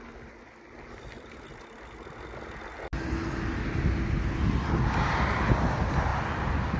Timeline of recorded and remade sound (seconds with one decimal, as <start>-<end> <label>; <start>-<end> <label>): 0.0-6.8 recorded